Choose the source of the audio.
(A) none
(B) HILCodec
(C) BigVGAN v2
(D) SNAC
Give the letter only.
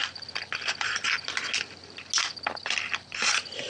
A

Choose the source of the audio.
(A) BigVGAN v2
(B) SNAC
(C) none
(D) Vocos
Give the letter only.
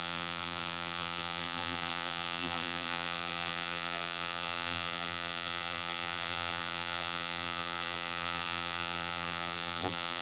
A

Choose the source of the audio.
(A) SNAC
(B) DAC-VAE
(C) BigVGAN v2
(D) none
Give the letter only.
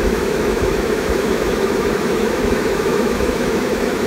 B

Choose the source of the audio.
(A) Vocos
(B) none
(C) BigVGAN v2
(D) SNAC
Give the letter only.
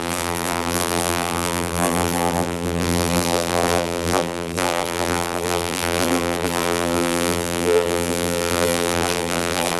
C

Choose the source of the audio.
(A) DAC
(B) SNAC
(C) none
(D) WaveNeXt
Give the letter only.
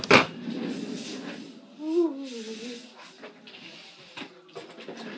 C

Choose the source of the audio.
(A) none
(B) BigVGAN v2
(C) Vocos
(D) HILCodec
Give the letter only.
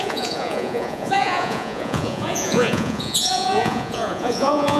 C